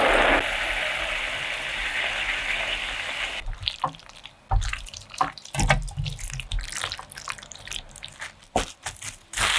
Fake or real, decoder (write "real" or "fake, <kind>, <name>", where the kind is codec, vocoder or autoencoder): real